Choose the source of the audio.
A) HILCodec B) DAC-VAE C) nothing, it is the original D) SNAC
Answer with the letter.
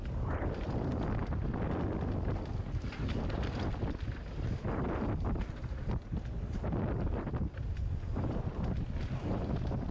C